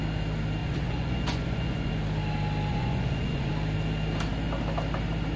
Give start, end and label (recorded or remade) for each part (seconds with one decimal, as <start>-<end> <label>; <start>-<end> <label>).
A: 0.0-0.6 recorded; 0.6-1.9 remade; 1.9-2.7 recorded; 2.7-3.5 remade; 3.5-5.4 recorded